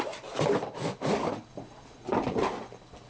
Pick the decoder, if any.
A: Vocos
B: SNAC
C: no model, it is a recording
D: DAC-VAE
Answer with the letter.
C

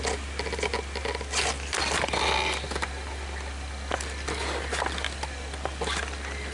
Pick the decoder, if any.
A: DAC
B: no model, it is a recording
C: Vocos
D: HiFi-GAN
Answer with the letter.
B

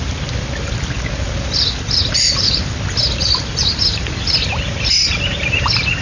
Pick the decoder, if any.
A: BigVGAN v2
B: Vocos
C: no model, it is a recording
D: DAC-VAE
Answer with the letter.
C